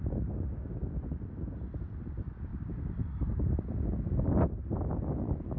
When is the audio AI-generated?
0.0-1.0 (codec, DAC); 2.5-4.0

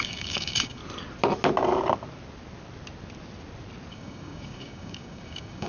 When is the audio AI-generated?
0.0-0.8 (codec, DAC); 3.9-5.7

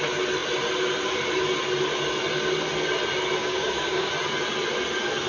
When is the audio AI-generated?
3.4-4.1 (codec, DAC)

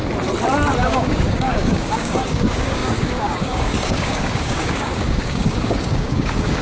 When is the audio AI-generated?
0.8-6.6 (codec, DAC)

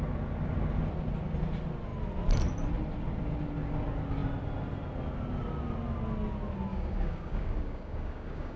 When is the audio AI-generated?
6.7-8.6 (codec, DAC)